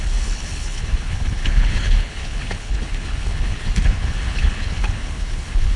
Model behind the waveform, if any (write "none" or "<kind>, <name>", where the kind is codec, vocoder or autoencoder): codec, HILCodec